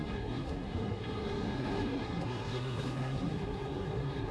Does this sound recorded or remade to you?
remade